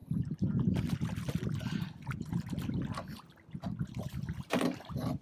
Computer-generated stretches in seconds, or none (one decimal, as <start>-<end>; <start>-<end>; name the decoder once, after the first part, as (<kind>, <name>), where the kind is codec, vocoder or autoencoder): none